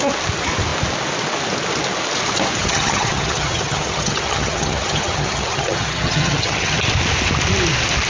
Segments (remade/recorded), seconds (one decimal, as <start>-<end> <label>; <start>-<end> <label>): 0.0-2.6 recorded; 2.6-6.8 remade; 6.8-8.1 recorded